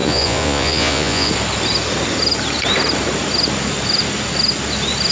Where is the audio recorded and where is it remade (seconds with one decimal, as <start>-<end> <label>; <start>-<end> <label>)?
0.0-1.3 remade; 1.3-5.1 recorded